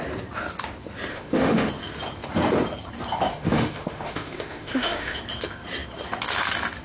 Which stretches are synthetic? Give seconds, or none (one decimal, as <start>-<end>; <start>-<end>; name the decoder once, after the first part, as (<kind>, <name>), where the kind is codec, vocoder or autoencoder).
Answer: 1.1-1.7 (autoencoder, DAC-VAE); 3.3-5.2